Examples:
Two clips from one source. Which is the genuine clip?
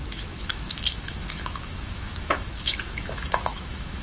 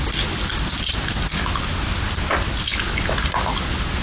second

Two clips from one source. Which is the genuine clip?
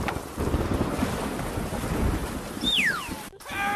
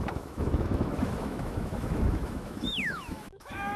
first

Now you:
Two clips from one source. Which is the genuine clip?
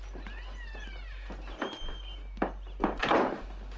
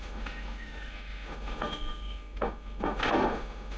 first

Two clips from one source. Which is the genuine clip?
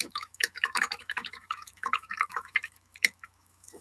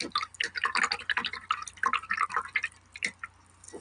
second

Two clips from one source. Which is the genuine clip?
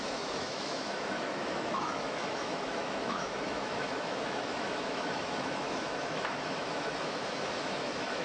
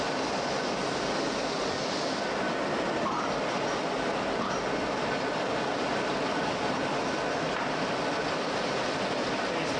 second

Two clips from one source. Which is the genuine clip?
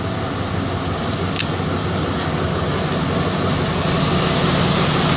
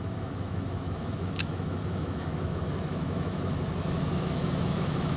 first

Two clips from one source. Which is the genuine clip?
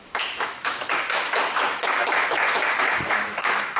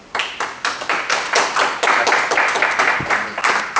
second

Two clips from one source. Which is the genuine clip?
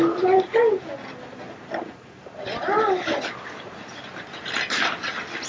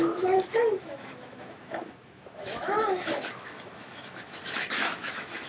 first